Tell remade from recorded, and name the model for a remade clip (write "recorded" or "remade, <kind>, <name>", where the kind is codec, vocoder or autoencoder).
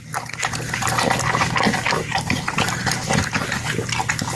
recorded